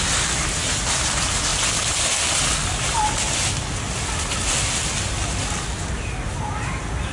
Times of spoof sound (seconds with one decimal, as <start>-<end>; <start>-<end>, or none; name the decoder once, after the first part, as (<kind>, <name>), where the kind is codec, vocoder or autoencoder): none